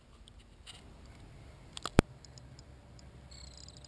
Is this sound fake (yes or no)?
no